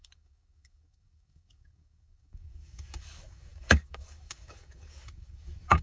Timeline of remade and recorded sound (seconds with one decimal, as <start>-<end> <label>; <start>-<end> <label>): 0.0-5.8 remade